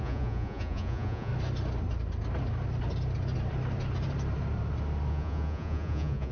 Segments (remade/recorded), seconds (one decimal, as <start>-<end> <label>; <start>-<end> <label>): 0.0-1.3 remade; 1.3-5.1 recorded; 5.1-6.3 remade